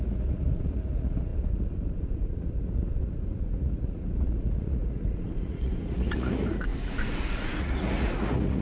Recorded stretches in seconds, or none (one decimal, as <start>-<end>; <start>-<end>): none